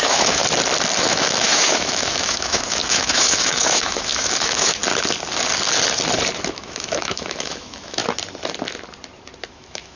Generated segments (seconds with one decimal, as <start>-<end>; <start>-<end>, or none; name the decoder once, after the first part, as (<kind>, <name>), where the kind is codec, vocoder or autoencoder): 0.0-0.4 (autoencoder, DAC-VAE); 1.0-4.8; 6.4-8.0; 9.4-10.0